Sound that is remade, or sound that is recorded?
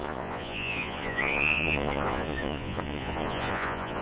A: remade